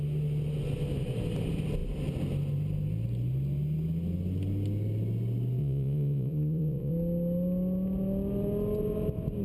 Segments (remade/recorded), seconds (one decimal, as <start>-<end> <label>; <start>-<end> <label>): 0.0-5.6 recorded; 5.6-6.9 remade; 6.9-9.4 recorded